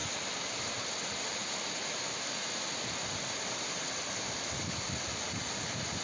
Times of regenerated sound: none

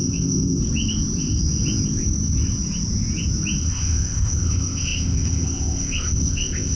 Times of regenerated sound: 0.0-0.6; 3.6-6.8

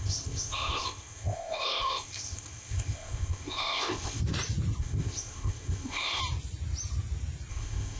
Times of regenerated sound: 0.0-4.2; 4.8-6.2; 7.5-8.0

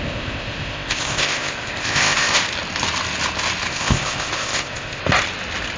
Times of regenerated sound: 0.0-2.4; 3.7-5.0